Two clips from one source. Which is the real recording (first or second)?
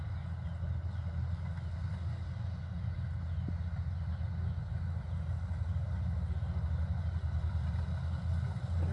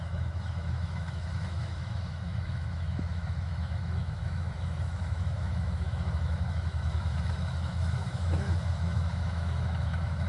first